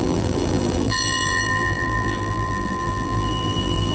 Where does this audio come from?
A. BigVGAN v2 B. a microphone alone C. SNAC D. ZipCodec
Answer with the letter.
A